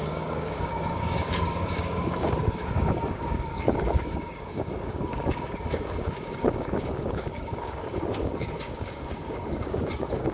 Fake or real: fake